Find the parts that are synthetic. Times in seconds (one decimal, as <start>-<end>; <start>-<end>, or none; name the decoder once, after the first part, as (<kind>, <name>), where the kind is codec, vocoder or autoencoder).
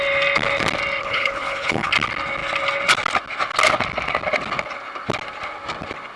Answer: 1.0-1.9 (codec, HILCodec)